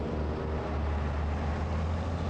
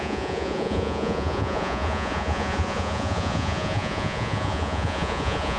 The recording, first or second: first